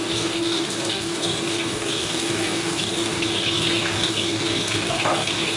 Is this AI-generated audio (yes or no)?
yes